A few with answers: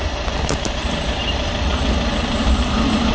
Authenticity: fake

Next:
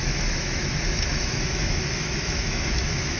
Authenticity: fake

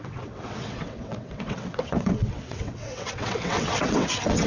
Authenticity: fake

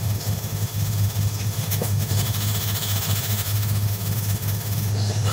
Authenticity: fake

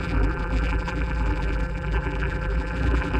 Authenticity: fake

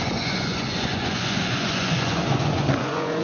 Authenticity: fake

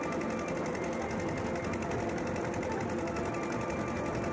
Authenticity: real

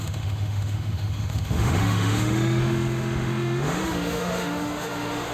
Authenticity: fake